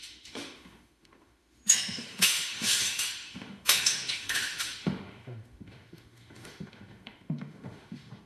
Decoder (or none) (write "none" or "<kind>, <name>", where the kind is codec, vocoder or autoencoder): autoencoder, DAC-VAE